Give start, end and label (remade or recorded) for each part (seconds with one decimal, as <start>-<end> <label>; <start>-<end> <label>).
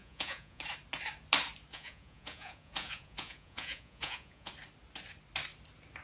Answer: 0.0-0.6 remade; 0.6-1.7 recorded; 1.7-4.5 remade; 4.5-6.0 recorded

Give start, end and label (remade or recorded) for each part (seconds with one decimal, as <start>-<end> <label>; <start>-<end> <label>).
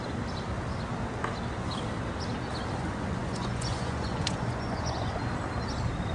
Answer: 0.0-2.8 recorded; 2.8-5.2 remade; 5.2-6.1 recorded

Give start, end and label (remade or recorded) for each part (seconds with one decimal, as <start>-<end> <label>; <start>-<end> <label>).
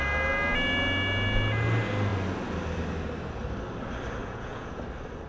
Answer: 0.0-4.2 recorded; 4.2-4.8 remade; 4.8-5.3 recorded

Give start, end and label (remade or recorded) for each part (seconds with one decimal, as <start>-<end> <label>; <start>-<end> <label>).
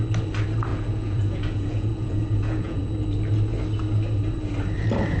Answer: 0.0-0.7 recorded; 0.7-2.9 remade; 2.9-5.2 recorded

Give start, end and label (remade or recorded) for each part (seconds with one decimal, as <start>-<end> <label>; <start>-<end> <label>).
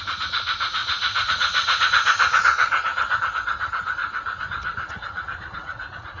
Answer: 0.0-0.8 recorded; 0.8-3.2 remade; 3.2-4.0 recorded; 4.0-6.2 remade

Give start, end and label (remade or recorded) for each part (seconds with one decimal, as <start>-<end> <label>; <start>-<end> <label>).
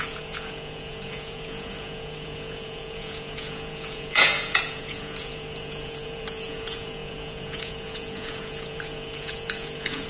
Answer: 0.0-10.1 remade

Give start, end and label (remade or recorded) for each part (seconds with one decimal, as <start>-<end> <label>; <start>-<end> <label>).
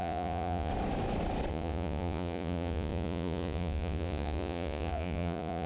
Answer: 0.0-0.7 remade; 0.7-1.5 recorded; 1.5-5.7 remade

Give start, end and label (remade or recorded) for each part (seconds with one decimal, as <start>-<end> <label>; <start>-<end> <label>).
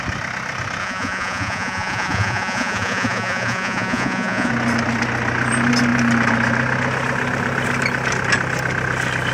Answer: 0.0-0.8 recorded; 0.8-4.5 remade; 4.5-9.3 recorded